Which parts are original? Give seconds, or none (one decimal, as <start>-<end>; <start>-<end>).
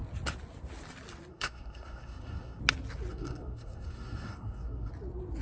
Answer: 0.0-1.3; 2.6-3.1; 4.9-5.4